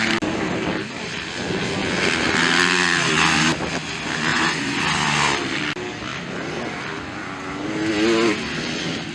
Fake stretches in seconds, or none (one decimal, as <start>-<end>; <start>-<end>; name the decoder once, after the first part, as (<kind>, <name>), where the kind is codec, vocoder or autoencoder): 4.3-4.8 (vocoder, Vocos)